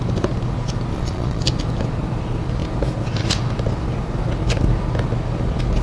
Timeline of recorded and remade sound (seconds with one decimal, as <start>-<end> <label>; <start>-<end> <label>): 0.0-0.9 recorded; 0.9-1.4 remade; 1.4-5.8 recorded